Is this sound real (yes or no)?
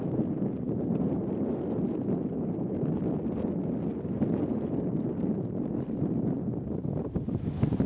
yes